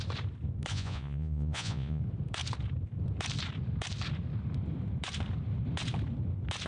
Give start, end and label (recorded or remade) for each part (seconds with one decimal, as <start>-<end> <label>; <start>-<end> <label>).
0.0-0.7 recorded; 0.7-2.0 remade; 2.0-6.7 recorded